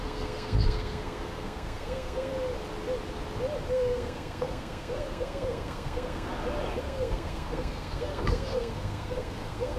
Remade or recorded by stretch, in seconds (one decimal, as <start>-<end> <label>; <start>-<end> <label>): 0.0-2.3 remade; 2.3-3.7 recorded; 3.7-6.3 remade; 6.3-6.8 recorded; 6.8-9.8 remade